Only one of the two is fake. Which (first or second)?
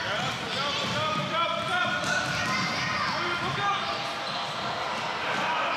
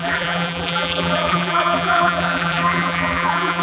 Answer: second